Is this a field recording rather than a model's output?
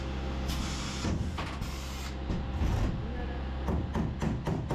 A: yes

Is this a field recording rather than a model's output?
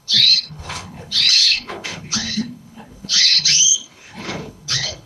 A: no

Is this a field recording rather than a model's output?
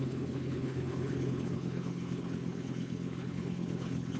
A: no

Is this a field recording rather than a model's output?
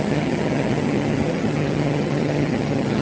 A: no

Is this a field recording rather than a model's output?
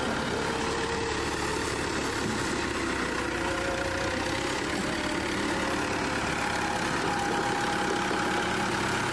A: yes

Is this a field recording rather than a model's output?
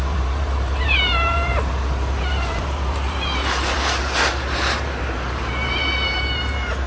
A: no